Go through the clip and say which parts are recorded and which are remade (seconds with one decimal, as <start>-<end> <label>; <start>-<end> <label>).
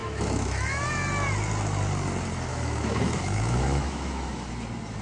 0.0-0.8 remade; 0.8-2.5 recorded; 2.5-4.5 remade; 4.5-5.0 recorded